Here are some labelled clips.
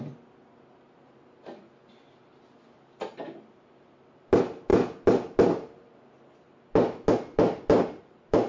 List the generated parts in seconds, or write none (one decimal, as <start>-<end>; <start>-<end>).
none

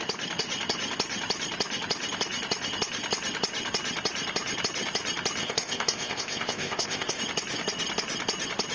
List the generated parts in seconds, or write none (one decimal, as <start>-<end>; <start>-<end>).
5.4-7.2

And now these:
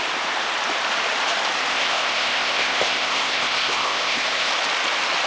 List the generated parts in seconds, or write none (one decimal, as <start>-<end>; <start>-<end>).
1.7-4.5